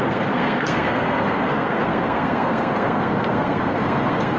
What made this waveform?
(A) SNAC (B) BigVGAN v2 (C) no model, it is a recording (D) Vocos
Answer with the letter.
A